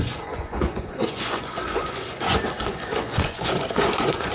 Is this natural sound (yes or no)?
no